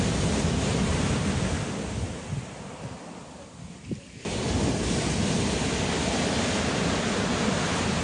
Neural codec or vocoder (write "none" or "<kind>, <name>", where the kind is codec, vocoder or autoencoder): none